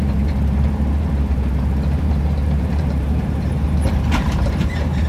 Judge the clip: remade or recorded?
remade